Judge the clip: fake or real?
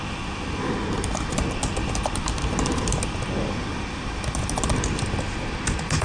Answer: real